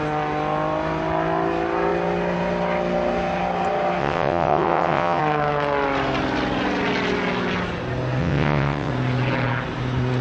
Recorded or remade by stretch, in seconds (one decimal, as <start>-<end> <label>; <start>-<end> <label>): 0.0-4.0 recorded; 4.0-5.2 remade; 5.2-8.2 recorded; 8.2-8.9 remade; 8.9-10.2 recorded